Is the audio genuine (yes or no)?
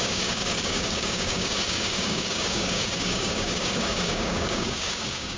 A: no